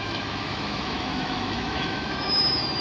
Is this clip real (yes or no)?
no